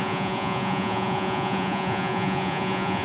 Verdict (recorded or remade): remade